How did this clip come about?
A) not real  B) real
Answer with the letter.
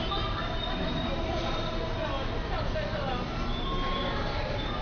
B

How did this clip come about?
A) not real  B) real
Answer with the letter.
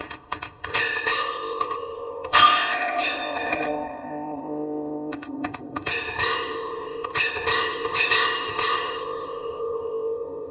A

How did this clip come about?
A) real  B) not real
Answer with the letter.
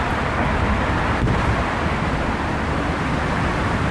A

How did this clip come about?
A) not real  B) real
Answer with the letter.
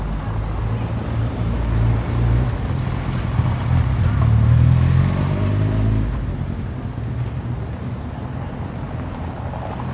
B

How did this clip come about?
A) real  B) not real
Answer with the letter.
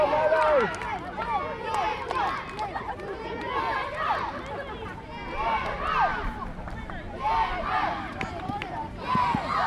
A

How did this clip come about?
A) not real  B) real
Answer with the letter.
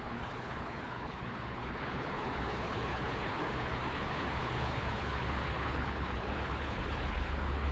A